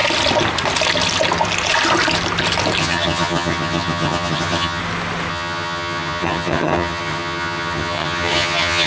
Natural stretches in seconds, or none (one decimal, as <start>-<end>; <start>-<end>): 0.0-2.8; 4.8-5.3